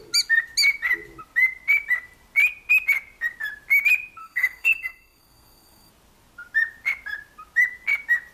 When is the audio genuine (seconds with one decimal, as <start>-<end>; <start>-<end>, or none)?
0.0-4.2; 5.9-8.3